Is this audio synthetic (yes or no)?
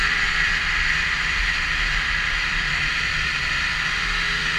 yes